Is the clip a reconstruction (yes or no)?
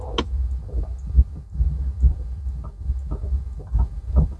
no